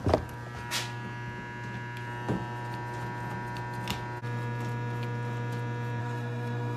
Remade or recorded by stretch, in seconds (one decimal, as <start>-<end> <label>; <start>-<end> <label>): 0.0-6.0 recorded; 6.0-6.8 remade